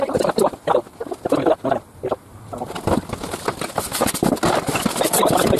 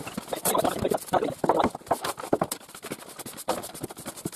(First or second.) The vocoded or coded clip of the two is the second